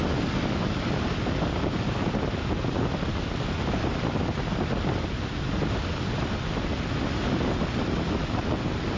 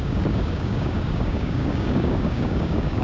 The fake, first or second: second